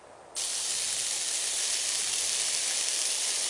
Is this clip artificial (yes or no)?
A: no